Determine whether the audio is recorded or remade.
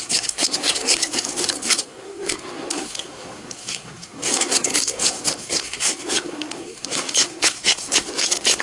remade